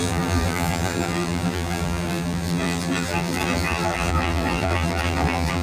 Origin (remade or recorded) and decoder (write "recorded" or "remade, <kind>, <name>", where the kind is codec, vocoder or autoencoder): remade, vocoder, BigVGAN v2